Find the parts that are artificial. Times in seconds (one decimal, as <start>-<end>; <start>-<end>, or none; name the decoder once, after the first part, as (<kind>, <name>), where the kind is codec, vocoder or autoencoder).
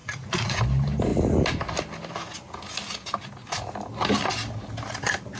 0.0-0.6 (vocoder, Vocos)